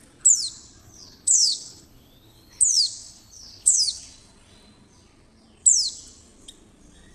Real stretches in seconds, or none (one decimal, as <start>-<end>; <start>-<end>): 0.0-0.8; 2.6-3.0; 3.8-7.1